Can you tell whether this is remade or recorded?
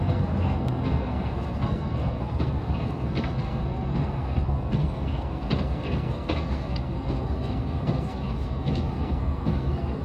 remade